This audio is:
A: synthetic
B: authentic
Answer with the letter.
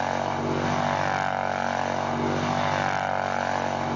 B